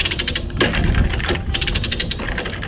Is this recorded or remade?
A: recorded